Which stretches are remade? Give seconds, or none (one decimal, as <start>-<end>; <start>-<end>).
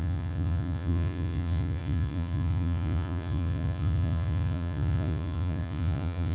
0.0-6.3